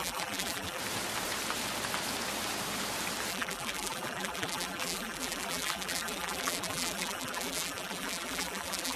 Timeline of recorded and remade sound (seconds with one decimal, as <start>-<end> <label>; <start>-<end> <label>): 0.0-0.8 remade; 0.8-3.3 recorded; 3.3-9.0 remade